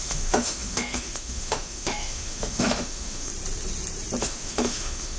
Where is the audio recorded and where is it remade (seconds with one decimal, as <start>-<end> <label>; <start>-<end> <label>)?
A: 0.0-3.3 remade; 3.3-4.2 recorded; 4.2-5.2 remade